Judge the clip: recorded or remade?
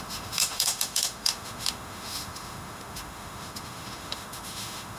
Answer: remade